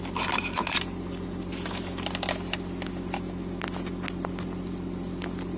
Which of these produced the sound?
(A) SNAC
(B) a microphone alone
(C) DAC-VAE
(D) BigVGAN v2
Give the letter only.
B